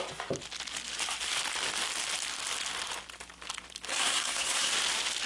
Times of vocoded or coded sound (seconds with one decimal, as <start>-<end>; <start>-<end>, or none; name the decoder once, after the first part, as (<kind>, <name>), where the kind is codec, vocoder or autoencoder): 3.9-4.7 (codec, SNAC)